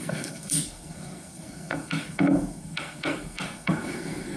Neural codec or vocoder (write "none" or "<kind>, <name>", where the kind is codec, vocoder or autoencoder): codec, SNAC